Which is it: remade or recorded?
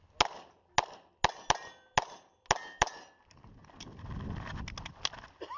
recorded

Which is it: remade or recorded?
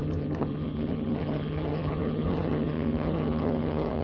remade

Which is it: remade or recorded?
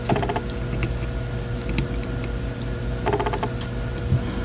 recorded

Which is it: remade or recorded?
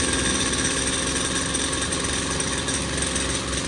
recorded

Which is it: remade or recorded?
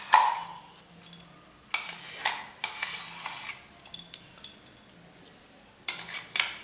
recorded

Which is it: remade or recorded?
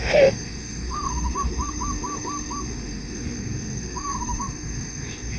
remade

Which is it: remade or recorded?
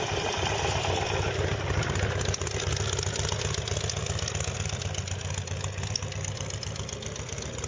recorded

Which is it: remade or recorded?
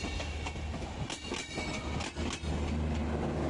recorded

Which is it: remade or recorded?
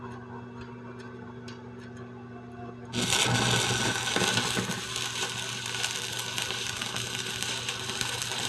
remade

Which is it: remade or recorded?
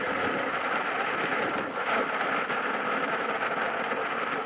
recorded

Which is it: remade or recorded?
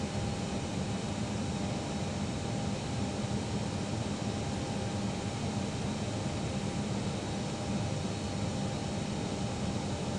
recorded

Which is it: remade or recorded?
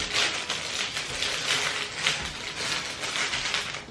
recorded